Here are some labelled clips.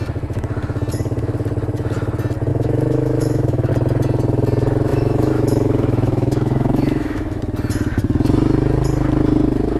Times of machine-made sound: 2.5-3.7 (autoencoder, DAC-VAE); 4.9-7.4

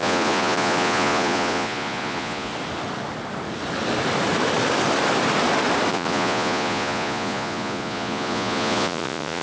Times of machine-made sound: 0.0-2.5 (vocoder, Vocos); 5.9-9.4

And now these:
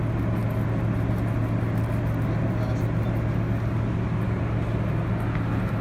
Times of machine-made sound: none

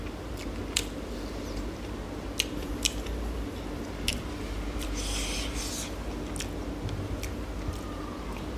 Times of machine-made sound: 0.6-2.7 (vocoder, BigVGAN v2); 4.1-5.6

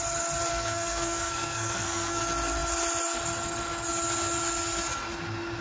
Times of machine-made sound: 0.5-2.2 (codec, SNAC)

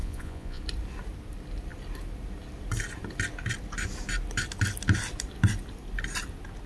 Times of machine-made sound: 0.0-0.6 (vocoder, Vocos)

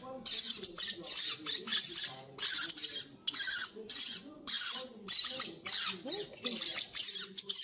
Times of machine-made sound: 3.6-4.9 (vocoder, Vocos)